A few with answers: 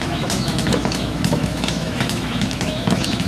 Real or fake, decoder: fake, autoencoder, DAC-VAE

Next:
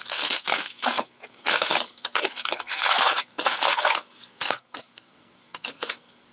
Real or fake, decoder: fake, codec, SNAC